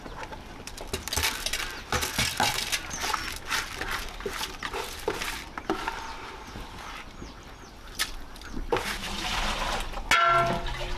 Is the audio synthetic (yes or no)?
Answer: no